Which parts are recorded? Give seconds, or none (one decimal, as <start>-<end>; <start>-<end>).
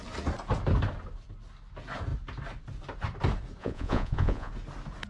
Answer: 0.0-3.6; 4.5-5.1